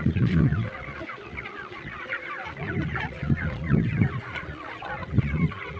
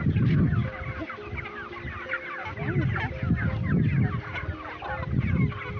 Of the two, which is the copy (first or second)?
first